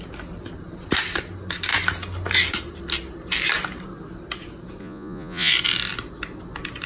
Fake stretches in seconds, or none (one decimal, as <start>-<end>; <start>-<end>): 4.8-5.5